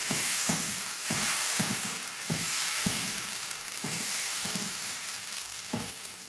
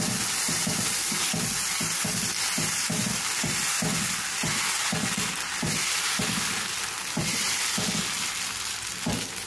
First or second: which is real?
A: second